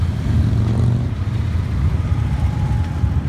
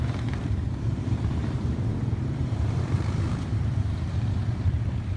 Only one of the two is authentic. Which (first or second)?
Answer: first